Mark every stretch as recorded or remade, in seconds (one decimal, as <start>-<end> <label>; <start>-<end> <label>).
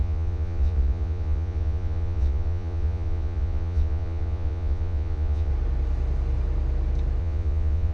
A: 0.0-5.5 remade; 5.5-7.2 recorded; 7.2-7.9 remade